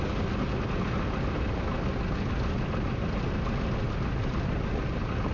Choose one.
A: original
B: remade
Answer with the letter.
A